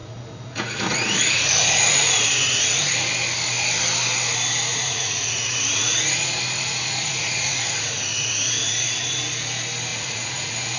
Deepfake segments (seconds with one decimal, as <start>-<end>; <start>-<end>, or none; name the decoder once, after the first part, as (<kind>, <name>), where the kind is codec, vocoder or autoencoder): 0.0-3.1 (vocoder, Vocos); 4.7-9.2; 9.9-10.8

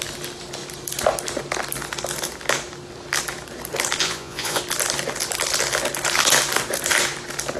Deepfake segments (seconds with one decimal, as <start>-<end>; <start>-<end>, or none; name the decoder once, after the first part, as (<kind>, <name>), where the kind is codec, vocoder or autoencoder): 4.0-4.6 (vocoder, Vocos)

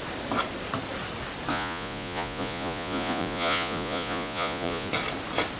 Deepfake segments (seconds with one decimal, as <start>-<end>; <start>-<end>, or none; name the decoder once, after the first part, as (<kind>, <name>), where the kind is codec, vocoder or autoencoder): 1.5-4.9 (vocoder, Vocos)

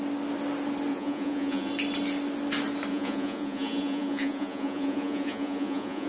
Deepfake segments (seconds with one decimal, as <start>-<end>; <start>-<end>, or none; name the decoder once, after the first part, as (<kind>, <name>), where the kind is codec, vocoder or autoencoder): 0.9-1.7 (vocoder, Vocos); 2.9-6.1

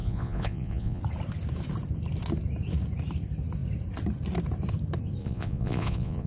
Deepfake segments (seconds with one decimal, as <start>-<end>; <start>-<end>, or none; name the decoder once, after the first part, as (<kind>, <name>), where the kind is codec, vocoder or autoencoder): 0.0-1.0 (vocoder, Vocos); 5.2-6.3